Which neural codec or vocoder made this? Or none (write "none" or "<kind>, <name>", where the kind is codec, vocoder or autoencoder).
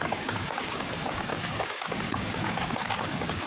codec, DAC